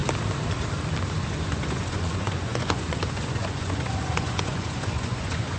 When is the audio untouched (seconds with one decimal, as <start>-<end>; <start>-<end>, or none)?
0.0-1.3